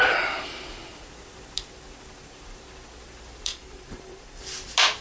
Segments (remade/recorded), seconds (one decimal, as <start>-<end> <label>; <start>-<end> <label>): 0.0-3.5 recorded; 3.5-4.4 remade; 4.4-5.0 recorded